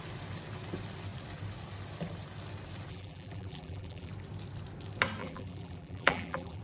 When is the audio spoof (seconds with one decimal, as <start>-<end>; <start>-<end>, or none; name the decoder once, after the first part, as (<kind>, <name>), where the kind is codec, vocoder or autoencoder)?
2.9-4.1 (vocoder, BigVGAN v2); 5.2-6.6